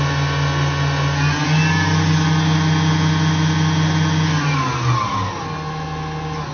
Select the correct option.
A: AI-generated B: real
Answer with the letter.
B